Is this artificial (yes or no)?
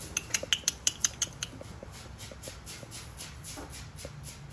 no